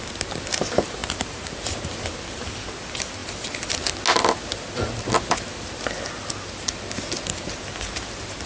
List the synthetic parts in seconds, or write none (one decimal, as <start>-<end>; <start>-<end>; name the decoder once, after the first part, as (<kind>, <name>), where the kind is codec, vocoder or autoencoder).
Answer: 1.0-1.5 (vocoder, BigVGAN v2)